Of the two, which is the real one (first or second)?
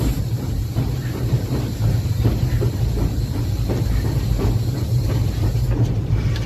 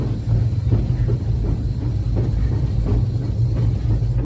second